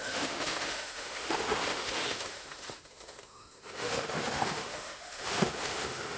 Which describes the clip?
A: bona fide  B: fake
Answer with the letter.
B